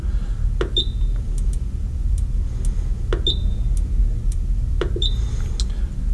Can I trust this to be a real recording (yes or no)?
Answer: yes